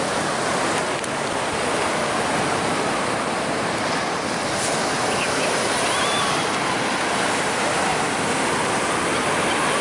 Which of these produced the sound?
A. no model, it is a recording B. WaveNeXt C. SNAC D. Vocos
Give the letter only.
A